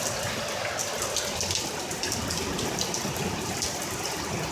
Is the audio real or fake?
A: real